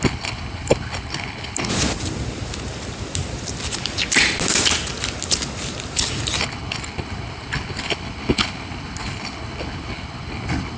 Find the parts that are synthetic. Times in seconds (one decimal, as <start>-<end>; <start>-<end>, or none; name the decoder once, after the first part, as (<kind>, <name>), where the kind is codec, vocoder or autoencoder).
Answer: 0.0-1.7 (codec, HILCodec); 6.4-10.8